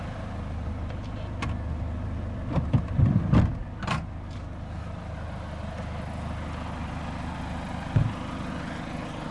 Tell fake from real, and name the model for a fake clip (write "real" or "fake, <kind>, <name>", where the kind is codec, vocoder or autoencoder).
real